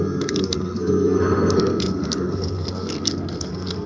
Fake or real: fake